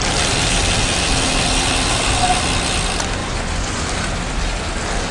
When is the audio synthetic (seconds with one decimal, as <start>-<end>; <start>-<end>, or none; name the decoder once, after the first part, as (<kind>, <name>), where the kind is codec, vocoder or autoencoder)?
3.2-3.8 (vocoder, Vocos)